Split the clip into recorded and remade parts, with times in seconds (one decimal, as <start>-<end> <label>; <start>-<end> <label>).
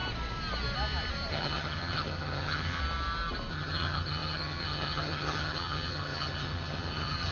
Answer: 0.0-1.3 recorded; 1.3-2.8 remade; 2.8-3.5 recorded; 3.5-7.3 remade